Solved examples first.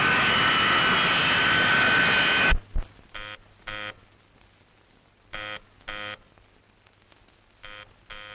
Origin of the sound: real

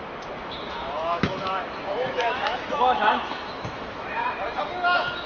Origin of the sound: fake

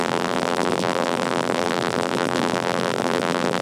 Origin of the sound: fake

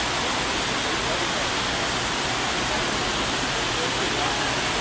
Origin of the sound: real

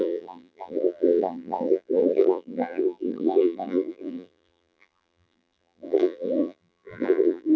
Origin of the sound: fake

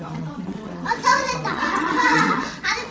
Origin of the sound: fake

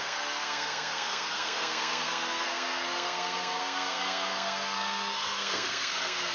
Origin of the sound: fake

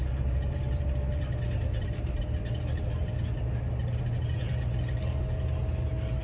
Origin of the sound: real